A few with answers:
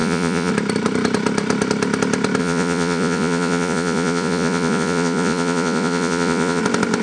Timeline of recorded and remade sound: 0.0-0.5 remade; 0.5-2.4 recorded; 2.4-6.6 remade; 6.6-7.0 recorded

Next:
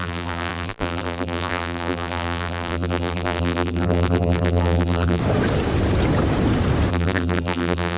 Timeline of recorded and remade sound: 0.0-5.2 remade; 5.2-6.9 recorded; 6.9-8.0 remade

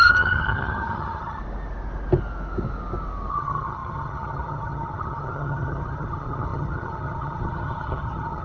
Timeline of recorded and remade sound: 0.0-1.4 remade; 1.4-3.3 recorded; 3.3-8.4 remade

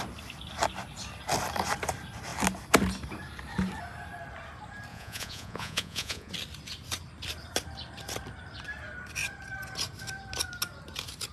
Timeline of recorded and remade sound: 0.0-4.9 recorded; 4.9-6.3 remade; 6.3-11.3 recorded

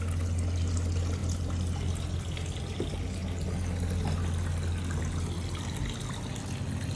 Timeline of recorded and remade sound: 0.0-7.0 recorded